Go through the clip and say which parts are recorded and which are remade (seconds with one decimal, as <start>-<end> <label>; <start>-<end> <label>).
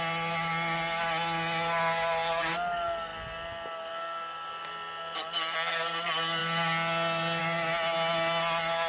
0.0-8.9 recorded